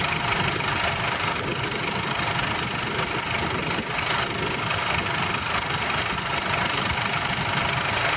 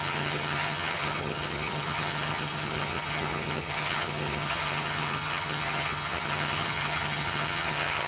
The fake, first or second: second